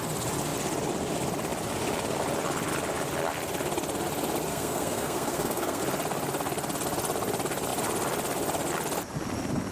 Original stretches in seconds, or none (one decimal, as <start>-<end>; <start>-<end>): 0.0-4.5; 5.8-9.7